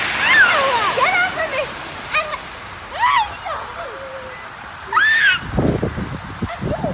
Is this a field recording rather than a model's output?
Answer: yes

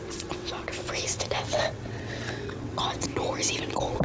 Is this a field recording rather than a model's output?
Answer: no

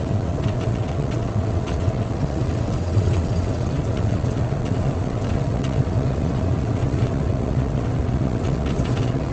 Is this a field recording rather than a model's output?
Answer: no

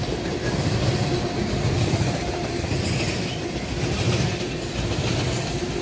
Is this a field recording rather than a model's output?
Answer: yes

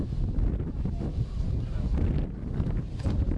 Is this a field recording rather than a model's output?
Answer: yes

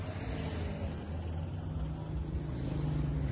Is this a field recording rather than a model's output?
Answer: yes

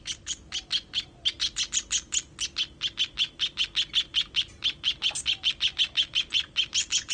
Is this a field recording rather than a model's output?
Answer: yes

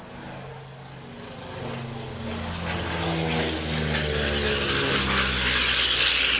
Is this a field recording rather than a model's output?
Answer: yes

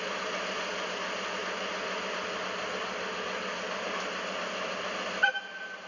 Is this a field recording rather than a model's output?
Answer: yes